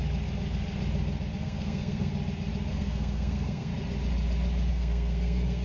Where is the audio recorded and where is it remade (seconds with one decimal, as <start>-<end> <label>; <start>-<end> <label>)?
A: 0.0-1.4 recorded; 1.4-2.1 remade; 2.1-2.7 recorded; 2.7-3.7 remade; 3.7-4.7 recorded; 4.7-5.6 remade